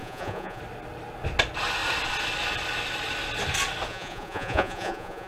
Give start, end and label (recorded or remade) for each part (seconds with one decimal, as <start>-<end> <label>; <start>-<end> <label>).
0.0-0.6 remade; 0.6-3.9 recorded; 3.9-5.3 remade